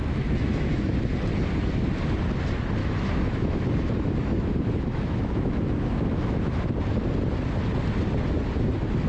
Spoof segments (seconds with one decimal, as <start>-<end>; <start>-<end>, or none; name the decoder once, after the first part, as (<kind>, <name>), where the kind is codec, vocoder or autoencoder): 0.0-1.0 (autoencoder, DAC-VAE); 2.8-6.6